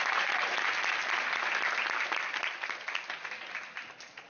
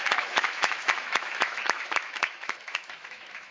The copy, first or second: second